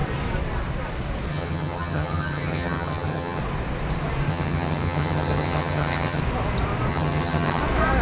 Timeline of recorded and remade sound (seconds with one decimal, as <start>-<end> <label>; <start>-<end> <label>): 0.0-1.3 recorded; 1.3-3.4 remade; 3.4-4.3 recorded; 4.3-6.2 remade; 6.2-6.9 recorded; 6.9-7.6 remade; 7.6-8.0 recorded